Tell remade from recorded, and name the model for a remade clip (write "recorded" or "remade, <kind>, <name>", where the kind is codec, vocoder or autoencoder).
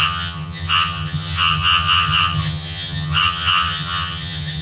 remade, vocoder, HiFi-GAN